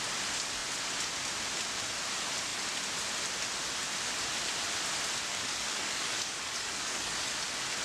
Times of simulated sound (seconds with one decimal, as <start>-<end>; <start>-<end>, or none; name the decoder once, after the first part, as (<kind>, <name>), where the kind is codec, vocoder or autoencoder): 5.3-7.3 (codec, DAC)

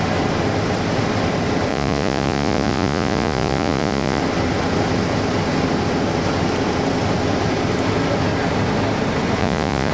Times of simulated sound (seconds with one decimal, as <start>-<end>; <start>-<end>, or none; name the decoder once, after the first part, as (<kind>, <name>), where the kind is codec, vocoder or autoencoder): 1.7-4.2 (vocoder, Vocos); 9.4-9.9

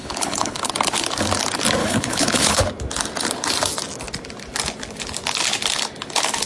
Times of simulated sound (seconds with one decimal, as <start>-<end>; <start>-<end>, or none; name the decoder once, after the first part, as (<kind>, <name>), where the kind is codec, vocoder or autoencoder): 0.0-0.7 (codec, HILCodec); 1.8-2.6